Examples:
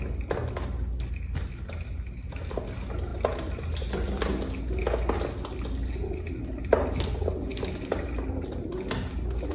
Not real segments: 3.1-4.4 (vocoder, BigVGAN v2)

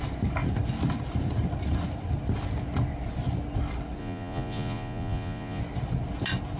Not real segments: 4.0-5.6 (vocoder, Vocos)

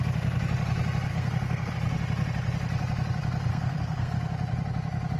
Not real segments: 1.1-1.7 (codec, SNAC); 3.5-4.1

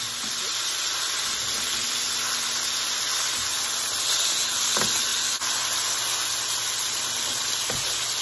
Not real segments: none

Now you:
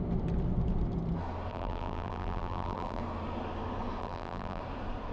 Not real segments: 1.5-3.0 (vocoder, BigVGAN v2); 4.0-4.6

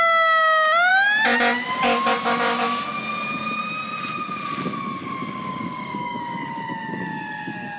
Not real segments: 5.0-7.8 (codec, DAC)

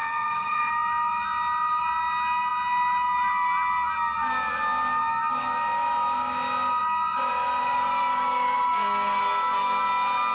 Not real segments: 0.0-0.7 (vocoder, HiFi-GAN)

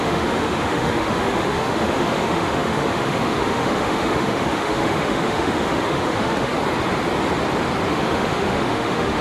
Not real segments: 0.0-6.5 (autoencoder, DAC-VAE); 7.9-9.2